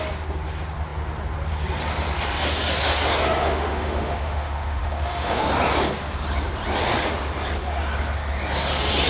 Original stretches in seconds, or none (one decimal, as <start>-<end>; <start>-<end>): 0.0-3.4; 5.5-9.1